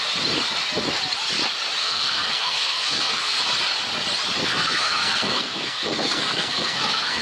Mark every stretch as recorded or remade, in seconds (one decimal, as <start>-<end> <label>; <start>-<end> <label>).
0.0-1.8 recorded; 1.8-3.4 remade; 3.4-4.4 recorded; 4.4-7.2 remade